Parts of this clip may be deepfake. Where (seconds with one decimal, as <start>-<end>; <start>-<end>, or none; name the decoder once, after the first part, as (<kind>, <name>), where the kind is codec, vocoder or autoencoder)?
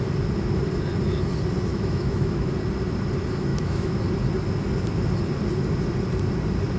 1.7-2.5 (autoencoder, DAC-VAE); 3.5-4.0